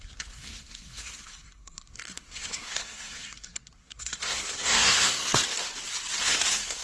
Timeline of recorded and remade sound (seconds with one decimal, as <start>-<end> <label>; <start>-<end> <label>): 0.0-5.4 remade; 5.4-6.2 recorded; 6.2-6.8 remade